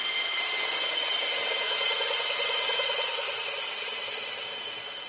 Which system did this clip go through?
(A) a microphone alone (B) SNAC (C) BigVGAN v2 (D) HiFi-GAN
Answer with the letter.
A